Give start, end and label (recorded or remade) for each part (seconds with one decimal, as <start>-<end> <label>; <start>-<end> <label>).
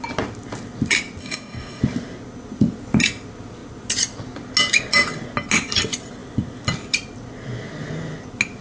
0.0-1.2 recorded; 1.2-1.8 remade; 1.8-8.6 recorded